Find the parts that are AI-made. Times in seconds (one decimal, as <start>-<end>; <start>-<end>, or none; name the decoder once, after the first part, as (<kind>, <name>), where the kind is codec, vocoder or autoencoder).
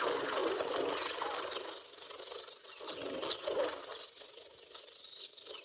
none